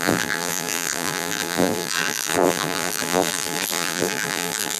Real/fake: fake